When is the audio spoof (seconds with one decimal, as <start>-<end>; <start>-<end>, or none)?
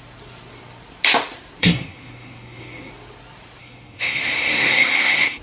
1.6-2.9; 3.6-5.4